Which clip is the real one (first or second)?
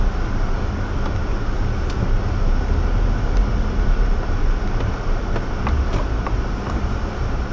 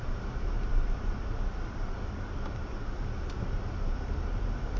first